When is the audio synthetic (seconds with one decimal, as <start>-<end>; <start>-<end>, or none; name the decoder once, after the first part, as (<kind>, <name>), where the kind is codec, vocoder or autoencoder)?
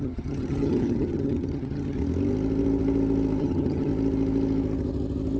0.0-2.0 (vocoder, HiFi-GAN); 3.4-3.9